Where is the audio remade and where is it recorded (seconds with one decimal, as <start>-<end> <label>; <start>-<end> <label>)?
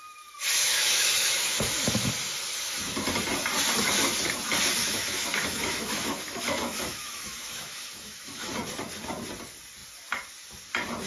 0.0-0.6 recorded; 0.6-2.1 remade; 2.1-4.8 recorded; 4.8-8.5 remade; 8.5-11.1 recorded